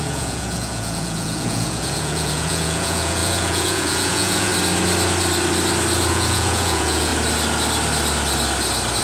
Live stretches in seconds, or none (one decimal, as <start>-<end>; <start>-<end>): 4.5-6.1; 7.1-9.0